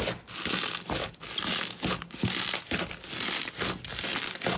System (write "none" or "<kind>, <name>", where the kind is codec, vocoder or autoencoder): none